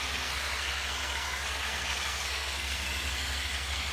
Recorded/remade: remade